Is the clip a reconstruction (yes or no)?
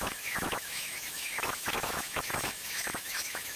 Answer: yes